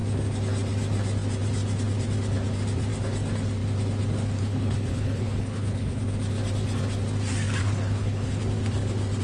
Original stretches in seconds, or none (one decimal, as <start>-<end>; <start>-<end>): 0.0-4.4; 6.0-7.6; 8.4-9.2